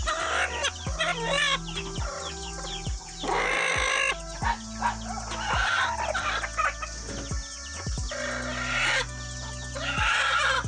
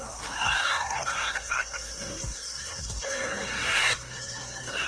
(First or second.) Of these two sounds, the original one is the first